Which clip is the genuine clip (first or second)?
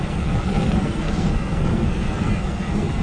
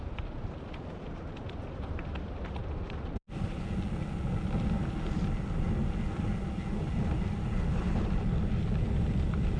second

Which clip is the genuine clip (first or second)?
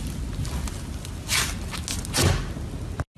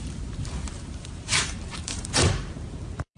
first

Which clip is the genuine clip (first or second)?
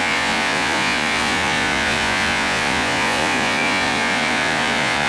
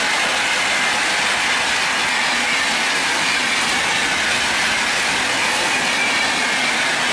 second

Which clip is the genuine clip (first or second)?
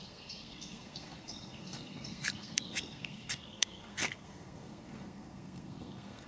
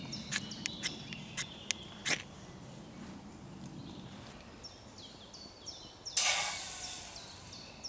second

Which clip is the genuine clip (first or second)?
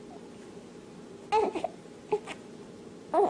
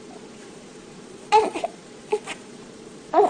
first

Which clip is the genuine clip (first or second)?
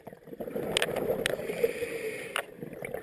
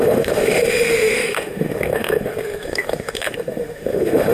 first